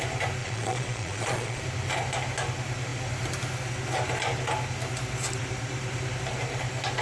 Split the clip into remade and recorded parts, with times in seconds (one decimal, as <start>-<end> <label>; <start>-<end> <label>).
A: 0.0-0.4 recorded; 0.4-1.6 remade; 1.6-7.0 recorded